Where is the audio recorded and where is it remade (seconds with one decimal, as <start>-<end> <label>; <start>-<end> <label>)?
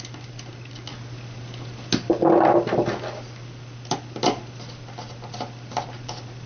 0.0-6.5 recorded